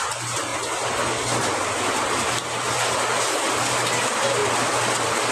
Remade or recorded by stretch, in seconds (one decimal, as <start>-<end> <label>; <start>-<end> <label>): 0.0-0.5 remade; 0.5-3.7 recorded; 3.7-4.4 remade; 4.4-5.3 recorded